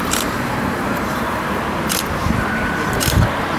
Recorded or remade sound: remade